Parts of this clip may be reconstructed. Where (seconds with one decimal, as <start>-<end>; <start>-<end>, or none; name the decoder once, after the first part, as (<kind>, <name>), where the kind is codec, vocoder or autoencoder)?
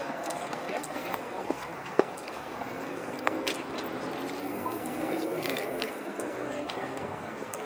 0.0-3.5 (codec, SNAC); 4.4-7.7